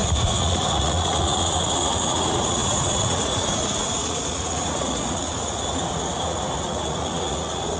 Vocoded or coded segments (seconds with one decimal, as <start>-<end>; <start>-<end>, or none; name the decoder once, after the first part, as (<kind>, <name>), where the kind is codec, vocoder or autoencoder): 0.0-7.8 (vocoder, Vocos)